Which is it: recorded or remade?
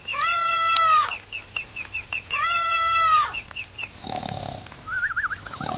recorded